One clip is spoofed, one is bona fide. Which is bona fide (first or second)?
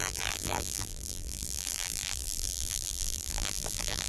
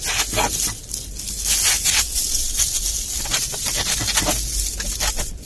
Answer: second